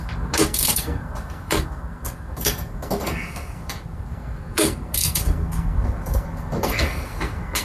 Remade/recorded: remade